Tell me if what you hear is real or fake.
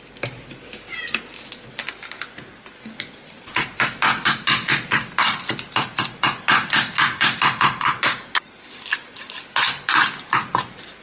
real